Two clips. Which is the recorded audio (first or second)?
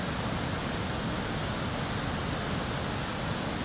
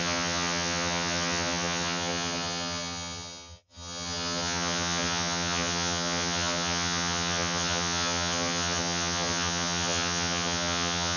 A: first